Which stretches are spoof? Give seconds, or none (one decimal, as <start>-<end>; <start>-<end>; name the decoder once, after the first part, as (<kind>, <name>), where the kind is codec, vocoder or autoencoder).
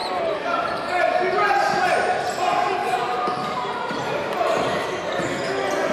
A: 0.0-0.9 (vocoder, BigVGAN v2); 2.8-5.2